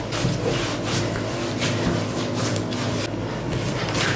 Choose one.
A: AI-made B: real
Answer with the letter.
B